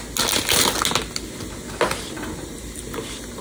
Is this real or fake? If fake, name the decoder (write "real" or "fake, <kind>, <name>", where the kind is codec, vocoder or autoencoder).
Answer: real